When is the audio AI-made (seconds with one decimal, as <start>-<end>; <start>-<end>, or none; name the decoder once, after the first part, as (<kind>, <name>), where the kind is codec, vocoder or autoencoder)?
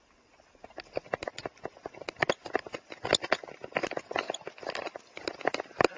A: none